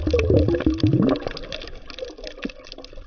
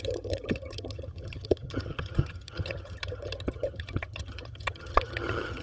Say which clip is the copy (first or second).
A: second